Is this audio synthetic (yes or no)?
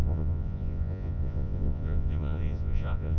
yes